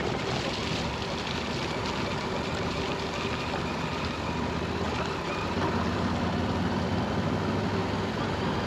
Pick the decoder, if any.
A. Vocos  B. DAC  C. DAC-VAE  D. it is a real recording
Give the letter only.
D